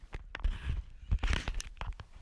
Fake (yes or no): no